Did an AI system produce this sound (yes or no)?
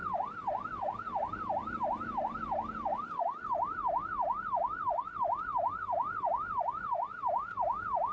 no